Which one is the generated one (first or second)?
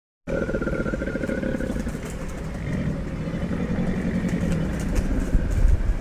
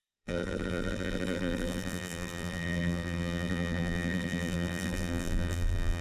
second